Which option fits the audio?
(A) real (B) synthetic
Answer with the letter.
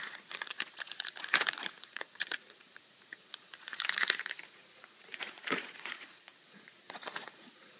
B